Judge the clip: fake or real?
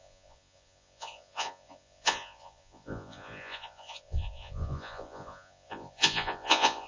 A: fake